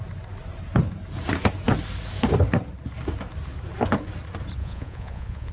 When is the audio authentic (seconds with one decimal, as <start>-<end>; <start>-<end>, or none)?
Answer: 0.0-4.6